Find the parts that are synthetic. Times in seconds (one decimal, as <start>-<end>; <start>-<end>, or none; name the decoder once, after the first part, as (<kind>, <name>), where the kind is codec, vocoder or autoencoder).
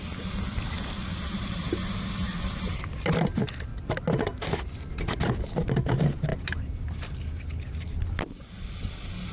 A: 1.3-2.7 (vocoder, BigVGAN v2); 6.3-6.9